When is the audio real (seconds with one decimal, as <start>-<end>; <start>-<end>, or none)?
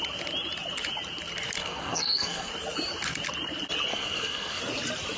0.0-1.6; 2.5-3.9; 4.6-5.2